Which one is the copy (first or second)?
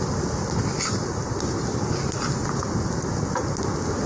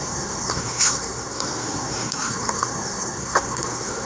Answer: second